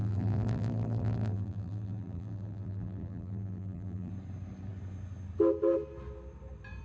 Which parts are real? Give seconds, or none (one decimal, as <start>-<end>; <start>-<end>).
4.1-6.8